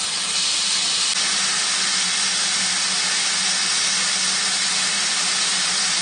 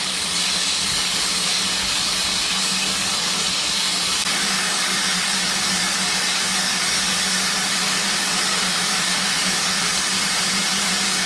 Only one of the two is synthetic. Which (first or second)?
second